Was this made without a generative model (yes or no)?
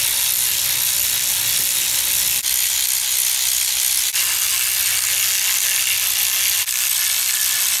yes